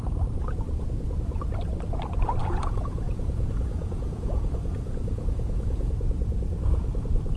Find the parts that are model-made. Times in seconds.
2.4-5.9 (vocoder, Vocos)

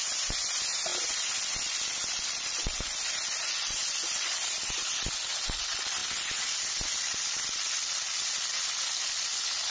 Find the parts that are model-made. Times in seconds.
none

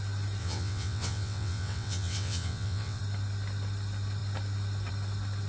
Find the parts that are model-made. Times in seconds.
0.4-3.0 (vocoder, WaveNeXt)

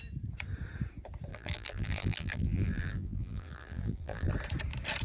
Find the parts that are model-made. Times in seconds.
1.3-4.3 (vocoder, BigVGAN v2)

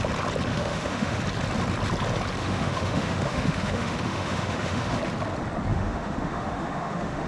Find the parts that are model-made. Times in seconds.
0.5-1.2 (autoencoder, DAC-VAE); 2.4-5.0; 5.7-7.3

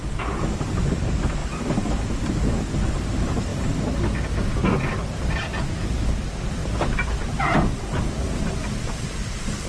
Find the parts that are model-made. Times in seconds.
0.0-1.4 (vocoder, BigVGAN v2); 2.7-3.5; 5.3-6.6; 7.2-9.7